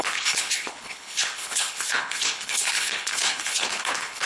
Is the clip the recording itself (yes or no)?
no